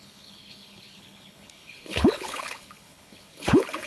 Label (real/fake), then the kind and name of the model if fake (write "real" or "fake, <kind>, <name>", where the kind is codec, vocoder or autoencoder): fake, codec, HILCodec